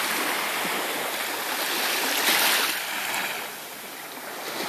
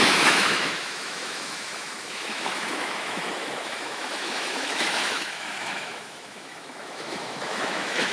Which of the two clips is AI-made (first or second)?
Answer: second